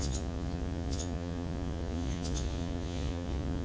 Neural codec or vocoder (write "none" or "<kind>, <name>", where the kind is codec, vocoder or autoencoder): vocoder, Vocos